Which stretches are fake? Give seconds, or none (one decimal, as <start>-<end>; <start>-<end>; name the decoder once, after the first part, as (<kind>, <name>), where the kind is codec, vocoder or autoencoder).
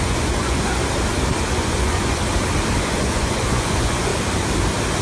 0.0-0.8 (vocoder, Vocos); 1.5-2.2; 2.8-4.1